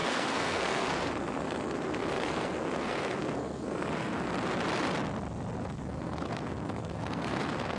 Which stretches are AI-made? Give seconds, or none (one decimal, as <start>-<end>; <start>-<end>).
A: 0.0-4.3; 5.7-7.8